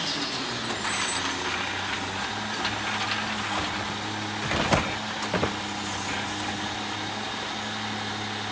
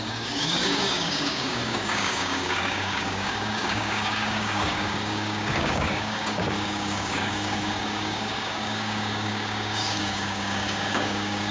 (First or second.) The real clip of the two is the first